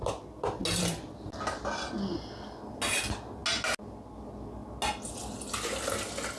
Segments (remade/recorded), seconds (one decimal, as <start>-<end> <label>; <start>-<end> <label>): 0.0-6.4 recorded